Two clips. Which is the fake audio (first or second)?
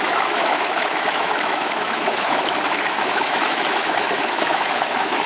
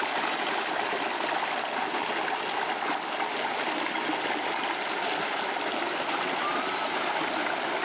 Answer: first